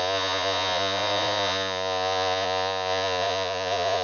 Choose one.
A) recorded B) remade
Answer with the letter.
B